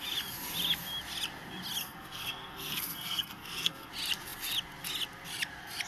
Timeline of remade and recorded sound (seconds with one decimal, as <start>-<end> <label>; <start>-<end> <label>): 0.0-1.8 recorded; 1.8-3.9 remade; 3.9-5.9 recorded